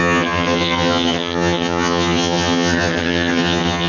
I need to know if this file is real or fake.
fake